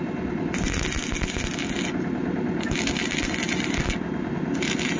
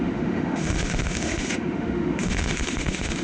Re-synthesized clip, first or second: second